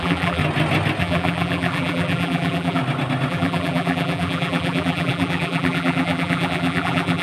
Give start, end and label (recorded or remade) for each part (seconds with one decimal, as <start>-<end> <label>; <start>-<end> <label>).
0.0-0.4 remade; 0.4-1.0 recorded; 1.0-2.8 remade; 2.8-3.3 recorded; 3.3-7.2 remade